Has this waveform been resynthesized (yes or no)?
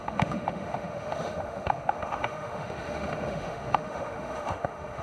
yes